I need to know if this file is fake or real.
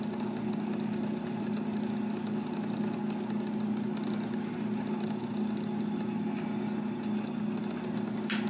real